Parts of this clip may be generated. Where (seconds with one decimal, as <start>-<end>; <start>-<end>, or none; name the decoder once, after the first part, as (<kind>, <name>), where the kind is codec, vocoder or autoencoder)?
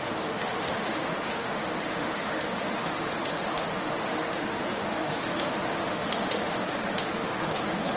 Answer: 0.0-8.0 (autoencoder, DAC-VAE)